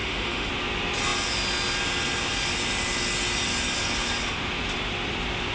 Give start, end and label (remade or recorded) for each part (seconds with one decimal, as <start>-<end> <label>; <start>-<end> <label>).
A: 0.0-0.5 remade; 0.5-5.5 recorded